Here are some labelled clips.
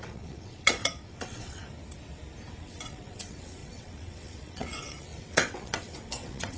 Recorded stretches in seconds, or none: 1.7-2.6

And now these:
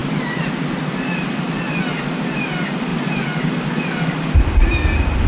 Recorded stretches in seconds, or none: 0.0-5.3

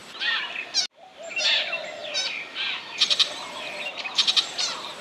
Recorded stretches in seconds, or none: 0.8-2.0

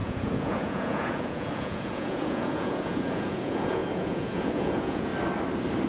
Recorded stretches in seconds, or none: 5.1-5.9

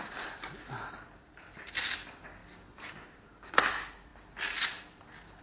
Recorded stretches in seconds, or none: 0.0-1.2; 1.7-5.4

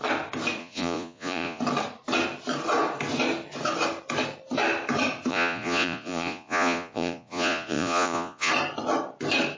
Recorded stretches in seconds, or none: 0.0-0.6; 1.6-5.3; 8.5-9.6

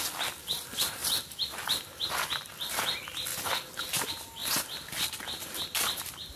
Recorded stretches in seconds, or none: 0.0-3.3; 3.8-4.4; 5.1-6.4

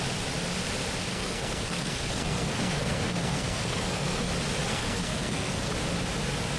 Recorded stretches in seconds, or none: 0.0-1.1; 4.3-4.7; 5.7-6.6